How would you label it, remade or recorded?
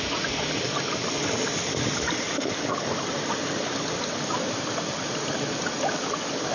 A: recorded